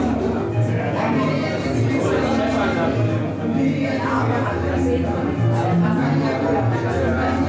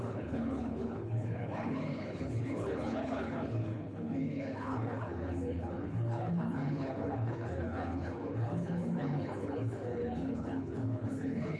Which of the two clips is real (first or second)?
first